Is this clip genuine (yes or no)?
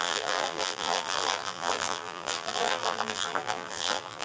no